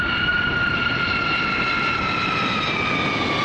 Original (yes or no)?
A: yes